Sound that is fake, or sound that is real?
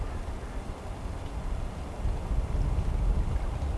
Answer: real